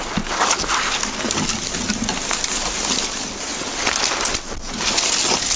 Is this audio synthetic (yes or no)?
no